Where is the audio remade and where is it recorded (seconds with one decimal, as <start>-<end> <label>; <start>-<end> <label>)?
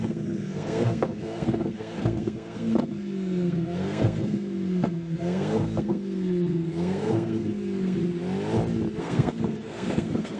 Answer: 0.0-8.0 remade; 8.0-9.0 recorded; 9.0-10.4 remade